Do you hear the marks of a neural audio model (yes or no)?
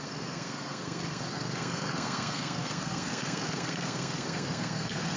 yes